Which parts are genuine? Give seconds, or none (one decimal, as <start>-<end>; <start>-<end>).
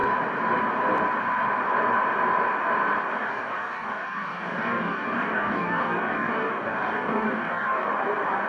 0.0-3.2; 7.9-8.5